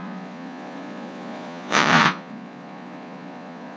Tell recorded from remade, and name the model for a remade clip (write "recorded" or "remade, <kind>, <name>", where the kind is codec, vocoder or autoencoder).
remade, vocoder, Vocos